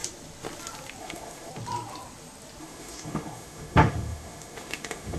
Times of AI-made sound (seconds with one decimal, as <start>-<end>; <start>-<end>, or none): 1.0-1.5; 2.6-5.2